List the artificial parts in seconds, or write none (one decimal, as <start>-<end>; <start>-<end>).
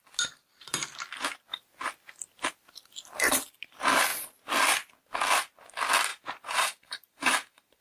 6.1-7.8